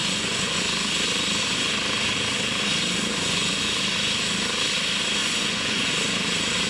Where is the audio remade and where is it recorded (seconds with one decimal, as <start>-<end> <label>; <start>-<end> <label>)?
0.0-0.6 remade; 0.6-3.0 recorded; 3.0-3.7 remade; 3.7-5.2 recorded; 5.2-5.9 remade; 5.9-6.7 recorded